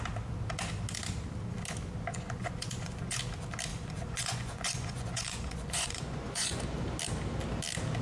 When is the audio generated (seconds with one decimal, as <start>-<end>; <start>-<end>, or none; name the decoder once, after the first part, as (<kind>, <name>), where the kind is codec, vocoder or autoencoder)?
2.1-3.2 (vocoder, Vocos); 3.7-6.6